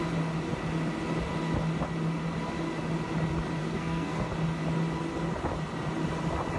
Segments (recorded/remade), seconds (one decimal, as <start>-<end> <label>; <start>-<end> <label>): 0.0-3.6 recorded; 3.6-4.3 remade; 4.3-6.6 recorded